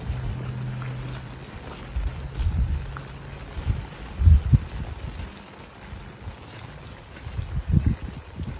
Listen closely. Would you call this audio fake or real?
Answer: real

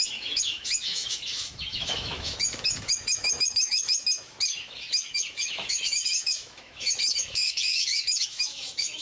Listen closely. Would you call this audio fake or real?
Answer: fake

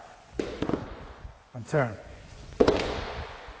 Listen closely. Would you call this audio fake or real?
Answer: fake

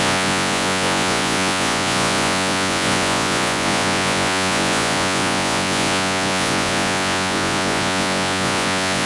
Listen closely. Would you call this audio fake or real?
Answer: fake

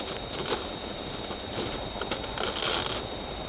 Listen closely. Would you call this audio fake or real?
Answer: real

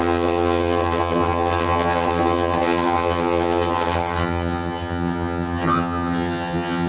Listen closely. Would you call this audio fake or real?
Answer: fake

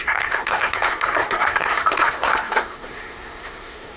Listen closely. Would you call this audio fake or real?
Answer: fake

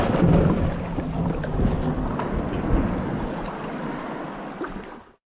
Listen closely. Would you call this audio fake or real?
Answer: real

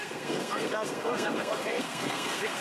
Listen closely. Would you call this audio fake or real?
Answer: fake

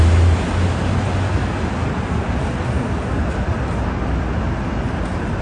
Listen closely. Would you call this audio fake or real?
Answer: real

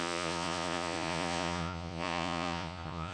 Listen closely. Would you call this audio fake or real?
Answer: fake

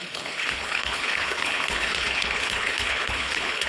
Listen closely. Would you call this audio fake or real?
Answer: fake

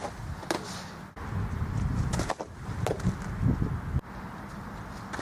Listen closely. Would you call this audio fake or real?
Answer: real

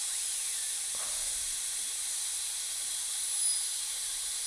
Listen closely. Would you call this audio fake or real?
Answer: real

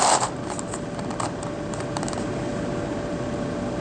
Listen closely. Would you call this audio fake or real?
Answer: real